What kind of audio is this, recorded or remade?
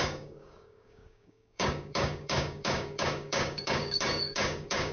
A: remade